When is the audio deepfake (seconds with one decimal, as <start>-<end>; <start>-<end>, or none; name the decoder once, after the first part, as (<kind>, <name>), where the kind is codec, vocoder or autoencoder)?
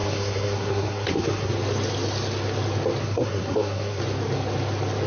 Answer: 0.0-1.5 (codec, SNAC); 3.0-4.0